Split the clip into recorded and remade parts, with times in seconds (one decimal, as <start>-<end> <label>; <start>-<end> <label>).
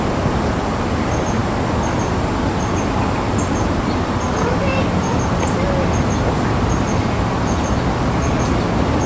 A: 0.0-9.1 recorded